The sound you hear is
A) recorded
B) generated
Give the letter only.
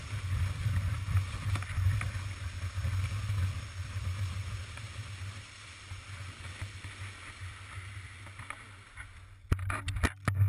A